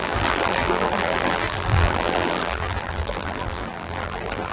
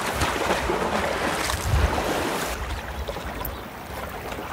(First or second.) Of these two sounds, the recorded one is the second